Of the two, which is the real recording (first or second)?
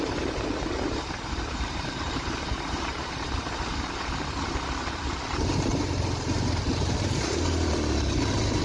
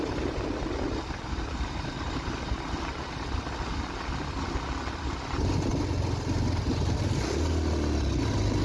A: second